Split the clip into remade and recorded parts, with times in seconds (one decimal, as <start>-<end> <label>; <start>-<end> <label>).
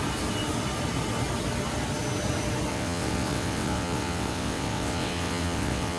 0.0-2.7 recorded; 2.7-6.0 remade